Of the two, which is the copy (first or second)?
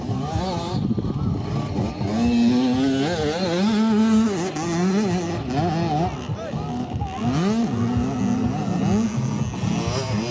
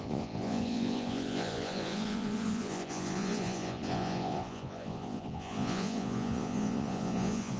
second